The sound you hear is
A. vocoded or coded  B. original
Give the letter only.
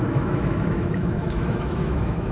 A